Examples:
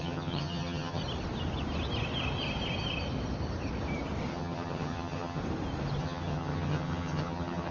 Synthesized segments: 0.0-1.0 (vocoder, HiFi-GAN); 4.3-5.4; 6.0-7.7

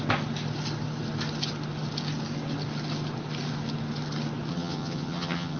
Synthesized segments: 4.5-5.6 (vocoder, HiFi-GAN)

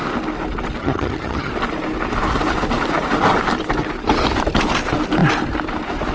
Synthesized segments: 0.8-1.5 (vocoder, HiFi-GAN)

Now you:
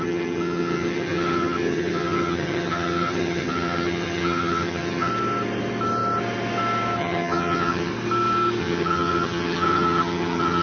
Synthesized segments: 0.0-5.1 (vocoder, HiFi-GAN); 7.0-7.9; 8.6-10.6

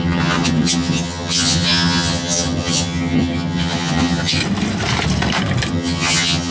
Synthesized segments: 0.0-4.4 (vocoder, HiFi-GAN); 5.7-6.5